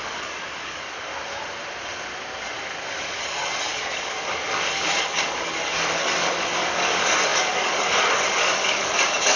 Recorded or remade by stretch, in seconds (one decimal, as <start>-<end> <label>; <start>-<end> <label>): 0.0-1.1 remade; 1.1-3.0 recorded; 3.0-9.4 remade